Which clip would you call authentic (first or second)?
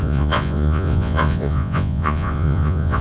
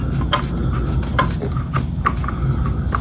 second